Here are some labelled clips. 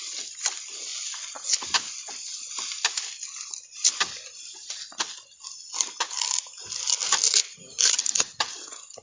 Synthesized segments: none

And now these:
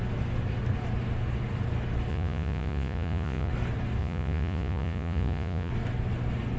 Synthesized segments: 2.1-3.5; 4.0-5.7

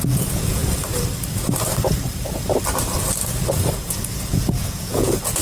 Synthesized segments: 0.0-0.6; 3.8-5.4

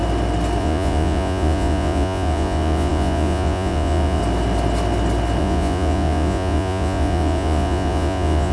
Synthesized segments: 0.6-4.2; 5.4-8.5

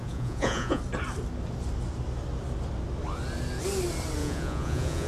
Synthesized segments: 0.0-0.8; 4.2-5.1

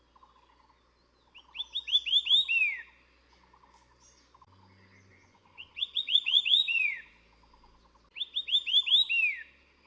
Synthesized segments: 5.1-7.1